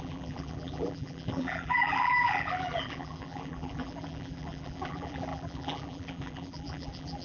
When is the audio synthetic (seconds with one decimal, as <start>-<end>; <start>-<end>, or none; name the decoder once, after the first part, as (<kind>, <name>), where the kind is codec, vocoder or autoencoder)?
0.0-7.2 (vocoder, BigVGAN v2)